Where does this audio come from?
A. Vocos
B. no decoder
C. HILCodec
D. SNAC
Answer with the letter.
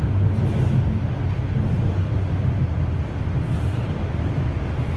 B